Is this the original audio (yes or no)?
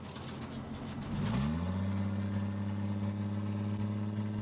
yes